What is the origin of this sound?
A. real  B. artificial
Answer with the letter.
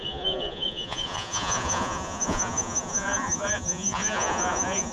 B